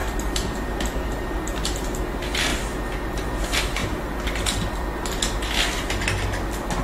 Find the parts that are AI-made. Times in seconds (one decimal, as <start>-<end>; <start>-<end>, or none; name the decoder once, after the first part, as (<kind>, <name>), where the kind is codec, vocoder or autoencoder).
0.0-2.0 (vocoder, BigVGAN v2); 2.5-3.4